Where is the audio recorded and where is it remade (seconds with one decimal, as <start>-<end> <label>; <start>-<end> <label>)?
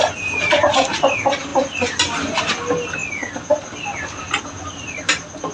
0.0-5.5 recorded